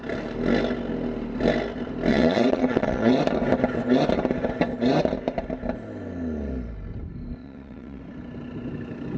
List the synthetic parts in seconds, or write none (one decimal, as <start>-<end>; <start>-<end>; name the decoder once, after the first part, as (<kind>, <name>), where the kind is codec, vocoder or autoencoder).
2.1-3.1 (vocoder, WaveNeXt); 7.4-8.0